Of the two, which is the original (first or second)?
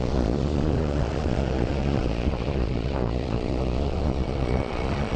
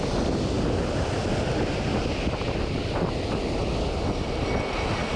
second